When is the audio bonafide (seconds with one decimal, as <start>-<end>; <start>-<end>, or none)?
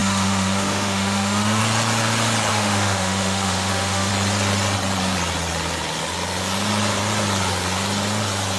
1.6-2.5; 4.1-8.6